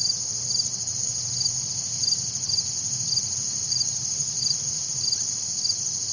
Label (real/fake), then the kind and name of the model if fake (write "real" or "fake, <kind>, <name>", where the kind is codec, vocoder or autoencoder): real